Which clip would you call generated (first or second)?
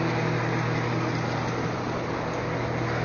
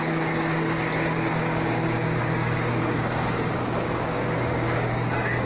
second